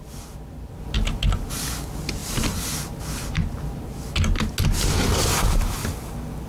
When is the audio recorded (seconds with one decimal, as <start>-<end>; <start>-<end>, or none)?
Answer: 0.0-2.2; 3.0-6.5